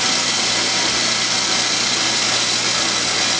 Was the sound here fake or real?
real